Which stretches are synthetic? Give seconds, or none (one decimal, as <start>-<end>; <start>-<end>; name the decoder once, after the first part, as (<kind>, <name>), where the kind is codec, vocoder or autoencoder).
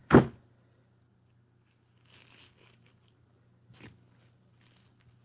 none